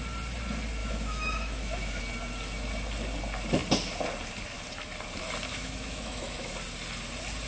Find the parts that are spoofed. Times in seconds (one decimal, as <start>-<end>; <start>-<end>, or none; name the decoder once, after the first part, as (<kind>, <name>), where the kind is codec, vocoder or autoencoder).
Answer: 0.8-2.0 (autoencoder, DAC-VAE); 5.5-6.5